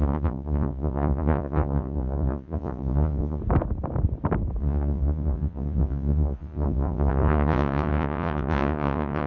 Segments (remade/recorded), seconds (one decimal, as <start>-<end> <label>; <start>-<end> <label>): 0.0-3.4 remade; 3.4-4.6 recorded; 4.6-9.3 remade